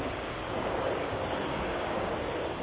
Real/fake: fake